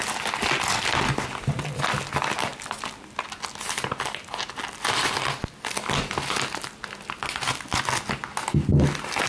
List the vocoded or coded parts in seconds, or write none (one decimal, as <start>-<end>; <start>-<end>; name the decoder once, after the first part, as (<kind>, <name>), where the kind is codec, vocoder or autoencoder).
none